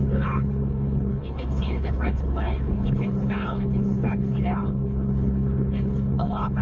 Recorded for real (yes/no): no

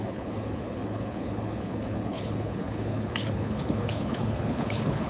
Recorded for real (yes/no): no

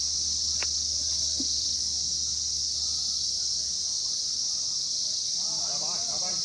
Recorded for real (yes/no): yes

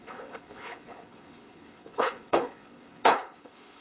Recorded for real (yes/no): no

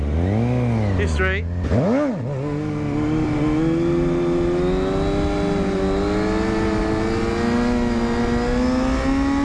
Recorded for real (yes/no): yes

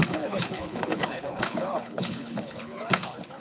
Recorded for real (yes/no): no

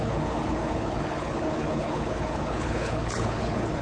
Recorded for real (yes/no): no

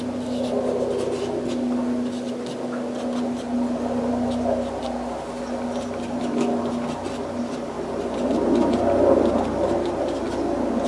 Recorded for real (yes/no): yes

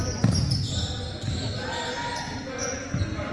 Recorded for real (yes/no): yes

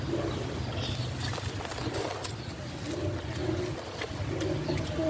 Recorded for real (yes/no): yes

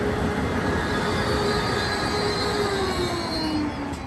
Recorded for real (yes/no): yes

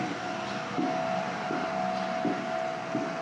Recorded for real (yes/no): yes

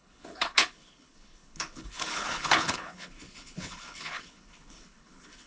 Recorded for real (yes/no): no